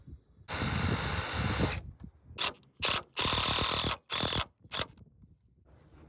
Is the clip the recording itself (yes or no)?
yes